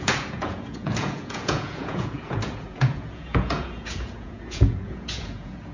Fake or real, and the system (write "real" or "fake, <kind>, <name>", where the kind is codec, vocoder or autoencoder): fake, vocoder, Vocos